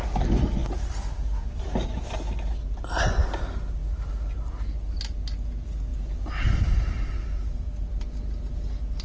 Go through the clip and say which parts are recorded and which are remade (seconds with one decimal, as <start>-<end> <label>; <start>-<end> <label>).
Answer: 0.0-9.0 recorded

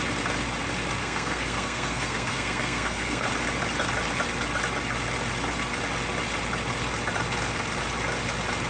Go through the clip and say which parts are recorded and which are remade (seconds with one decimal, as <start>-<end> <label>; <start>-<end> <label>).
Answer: 0.0-1.0 recorded; 1.0-3.3 remade; 3.3-8.7 recorded